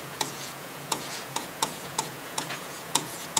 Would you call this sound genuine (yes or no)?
no